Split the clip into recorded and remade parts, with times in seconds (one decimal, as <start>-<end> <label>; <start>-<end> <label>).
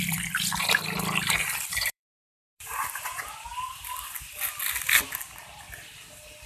0.0-1.7 recorded; 1.7-3.0 remade; 3.0-6.5 recorded